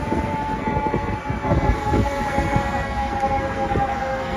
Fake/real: fake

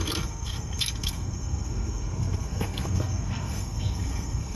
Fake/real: fake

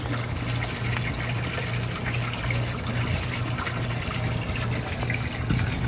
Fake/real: real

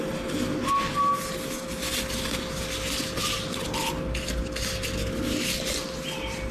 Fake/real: real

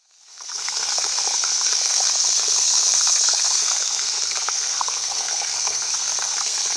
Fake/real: fake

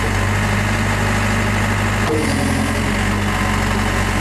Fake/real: real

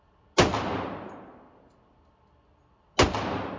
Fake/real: real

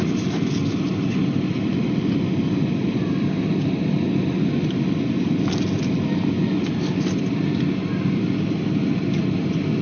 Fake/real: real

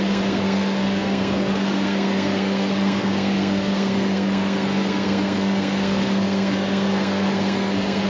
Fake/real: fake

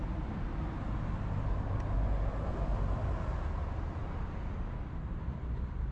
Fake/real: real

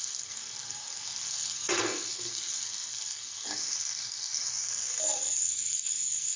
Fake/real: fake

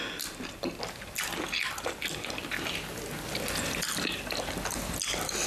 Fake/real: real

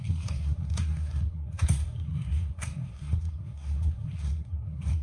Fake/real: fake